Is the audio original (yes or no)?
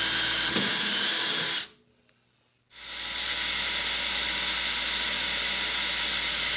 yes